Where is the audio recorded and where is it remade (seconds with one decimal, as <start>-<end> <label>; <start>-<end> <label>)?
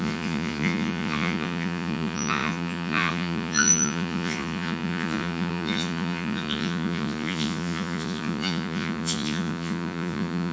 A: 0.0-10.5 remade